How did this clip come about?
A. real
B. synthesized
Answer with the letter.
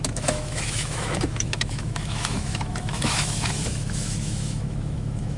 B